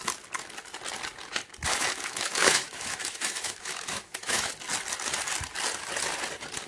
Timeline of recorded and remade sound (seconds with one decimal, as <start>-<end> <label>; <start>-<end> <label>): 0.0-1.7 recorded; 1.7-4.5 remade; 4.5-6.7 recorded